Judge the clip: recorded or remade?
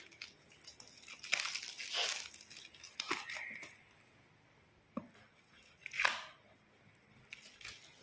recorded